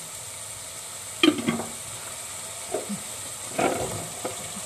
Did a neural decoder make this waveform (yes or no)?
no